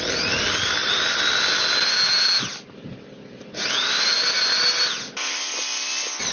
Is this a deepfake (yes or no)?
no